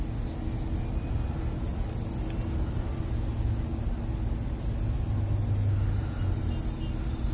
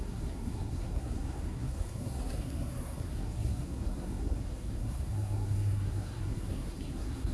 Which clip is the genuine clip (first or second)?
first